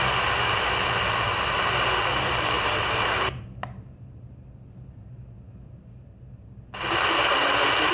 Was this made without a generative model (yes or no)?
yes